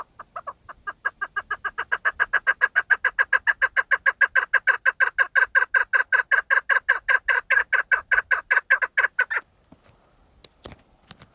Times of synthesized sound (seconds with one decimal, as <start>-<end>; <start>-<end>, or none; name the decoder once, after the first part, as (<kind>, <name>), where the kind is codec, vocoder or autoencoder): none